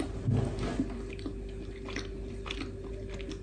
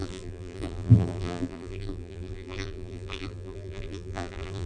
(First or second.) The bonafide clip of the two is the first